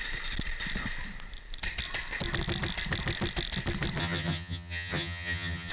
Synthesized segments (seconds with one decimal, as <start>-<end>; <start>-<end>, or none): 4.0-5.7